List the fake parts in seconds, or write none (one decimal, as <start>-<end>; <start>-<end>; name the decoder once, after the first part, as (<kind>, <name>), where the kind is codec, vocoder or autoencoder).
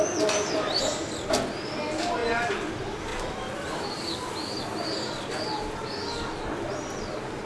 3.1-4.6 (vocoder, BigVGAN v2)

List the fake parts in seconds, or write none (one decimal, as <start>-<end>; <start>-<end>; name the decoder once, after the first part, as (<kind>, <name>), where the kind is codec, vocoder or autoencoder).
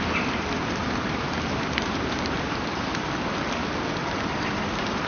0.8-3.0 (vocoder, BigVGAN v2); 4.0-5.1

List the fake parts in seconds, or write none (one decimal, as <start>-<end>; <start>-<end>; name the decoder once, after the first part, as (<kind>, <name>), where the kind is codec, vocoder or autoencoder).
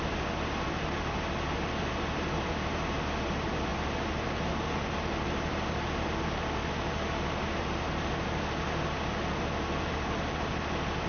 none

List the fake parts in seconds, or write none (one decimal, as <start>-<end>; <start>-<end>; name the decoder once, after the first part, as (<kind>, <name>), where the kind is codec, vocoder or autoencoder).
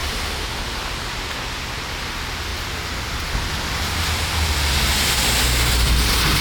0.0-0.5 (vocoder, BigVGAN v2)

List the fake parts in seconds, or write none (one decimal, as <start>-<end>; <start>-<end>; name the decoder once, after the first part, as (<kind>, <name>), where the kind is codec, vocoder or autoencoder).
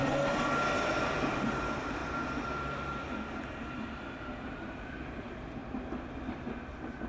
1.0-2.0 (vocoder, BigVGAN v2); 4.4-5.6; 6.1-7.1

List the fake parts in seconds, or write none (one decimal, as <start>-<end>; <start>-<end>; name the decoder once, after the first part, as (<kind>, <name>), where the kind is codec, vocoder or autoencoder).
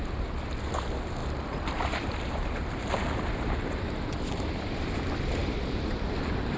1.2-4.5 (vocoder, BigVGAN v2); 5.4-6.6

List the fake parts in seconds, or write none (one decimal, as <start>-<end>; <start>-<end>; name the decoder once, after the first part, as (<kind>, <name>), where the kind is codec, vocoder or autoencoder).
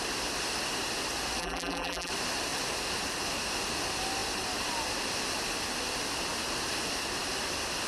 1.4-2.1 (vocoder, BigVGAN v2)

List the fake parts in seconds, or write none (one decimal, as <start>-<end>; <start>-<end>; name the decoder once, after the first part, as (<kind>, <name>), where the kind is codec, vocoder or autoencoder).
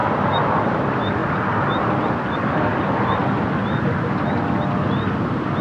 0.7-1.2 (vocoder, BigVGAN v2); 1.9-3.2; 5.0-5.6